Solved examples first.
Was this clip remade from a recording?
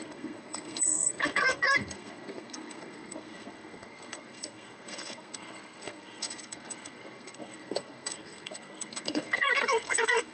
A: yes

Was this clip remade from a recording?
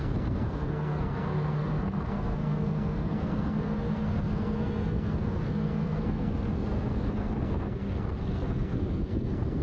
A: yes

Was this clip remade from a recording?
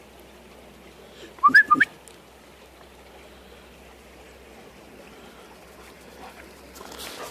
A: no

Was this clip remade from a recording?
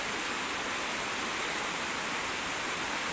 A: no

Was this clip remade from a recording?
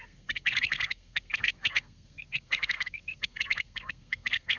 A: yes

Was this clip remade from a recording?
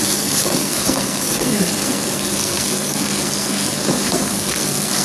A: yes